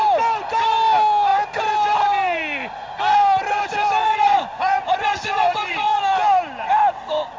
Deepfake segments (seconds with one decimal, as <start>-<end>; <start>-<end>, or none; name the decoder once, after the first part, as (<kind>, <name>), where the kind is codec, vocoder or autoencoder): 4.0-6.0 (vocoder, Vocos)